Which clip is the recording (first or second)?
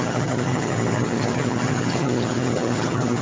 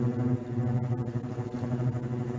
second